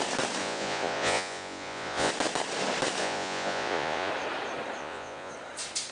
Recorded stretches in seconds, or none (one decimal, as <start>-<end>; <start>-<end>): 0.0-0.4; 2.1-3.0; 4.1-4.8; 5.3-5.9